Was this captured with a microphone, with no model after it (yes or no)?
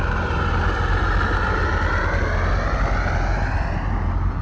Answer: yes